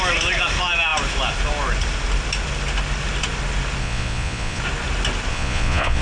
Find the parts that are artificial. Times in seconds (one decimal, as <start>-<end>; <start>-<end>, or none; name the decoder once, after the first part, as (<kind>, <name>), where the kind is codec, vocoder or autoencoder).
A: 3.8-4.6 (vocoder, Vocos); 5.3-6.0